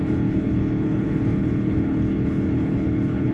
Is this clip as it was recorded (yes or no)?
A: no